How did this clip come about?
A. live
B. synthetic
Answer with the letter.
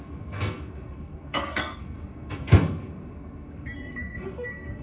B